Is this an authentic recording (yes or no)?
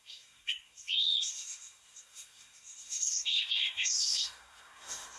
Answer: no